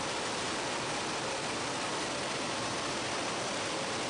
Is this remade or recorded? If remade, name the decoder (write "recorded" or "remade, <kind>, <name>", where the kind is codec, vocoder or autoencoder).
recorded